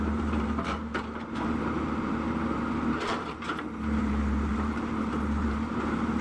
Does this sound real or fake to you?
fake